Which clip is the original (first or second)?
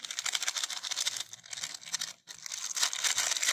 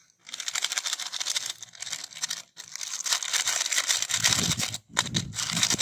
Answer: first